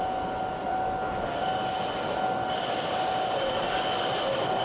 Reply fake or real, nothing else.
real